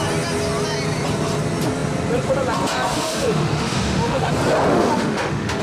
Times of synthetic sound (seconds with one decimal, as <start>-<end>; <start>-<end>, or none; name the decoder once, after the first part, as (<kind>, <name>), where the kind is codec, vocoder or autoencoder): 2.9-4.3 (autoencoder, DAC-VAE); 4.7-5.6